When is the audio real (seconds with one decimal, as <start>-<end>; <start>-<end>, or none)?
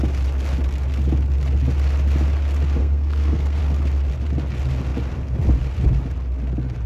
0.0-2.8; 3.6-6.9